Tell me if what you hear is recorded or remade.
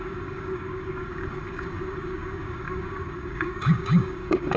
remade